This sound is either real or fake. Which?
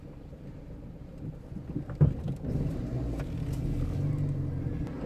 real